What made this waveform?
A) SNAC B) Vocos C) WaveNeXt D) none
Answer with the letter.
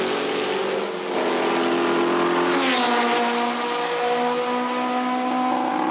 D